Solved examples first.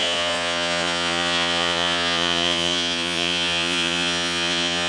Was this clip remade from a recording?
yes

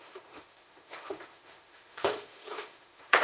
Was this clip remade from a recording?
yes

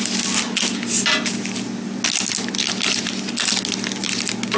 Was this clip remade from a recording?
no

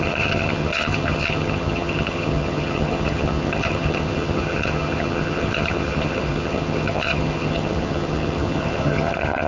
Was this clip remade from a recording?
yes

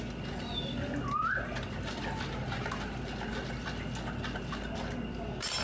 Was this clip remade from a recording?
no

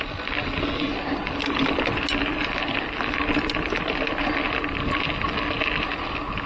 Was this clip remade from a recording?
no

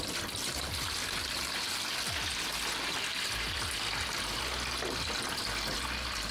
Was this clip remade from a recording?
no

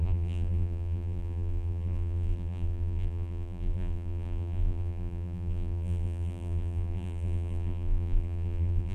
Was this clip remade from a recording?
yes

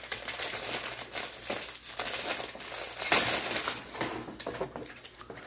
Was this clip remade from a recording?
no